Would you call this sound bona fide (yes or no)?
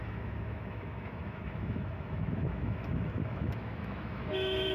no